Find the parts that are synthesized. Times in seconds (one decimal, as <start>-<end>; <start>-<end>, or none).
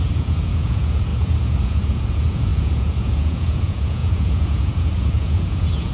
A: 0.0-5.9